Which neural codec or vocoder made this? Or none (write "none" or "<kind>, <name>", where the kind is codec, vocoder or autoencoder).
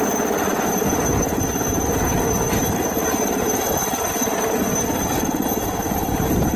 none